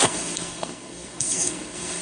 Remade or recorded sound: remade